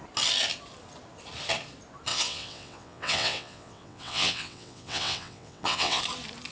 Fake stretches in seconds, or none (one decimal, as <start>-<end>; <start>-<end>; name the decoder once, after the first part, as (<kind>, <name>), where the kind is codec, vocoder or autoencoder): 2.1-6.0 (vocoder, WaveNeXt)